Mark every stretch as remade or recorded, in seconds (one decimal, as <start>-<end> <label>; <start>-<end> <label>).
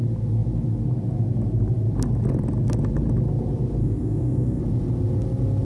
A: 0.0-3.8 recorded; 3.8-4.6 remade; 4.6-5.6 recorded